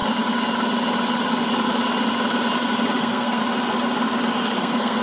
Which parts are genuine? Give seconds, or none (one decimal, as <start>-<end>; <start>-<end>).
0.0-3.0; 3.4-4.6